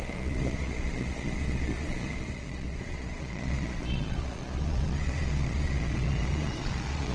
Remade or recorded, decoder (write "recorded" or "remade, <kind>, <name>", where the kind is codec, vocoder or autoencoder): remade, vocoder, Vocos